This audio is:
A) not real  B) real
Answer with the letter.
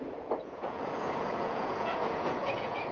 A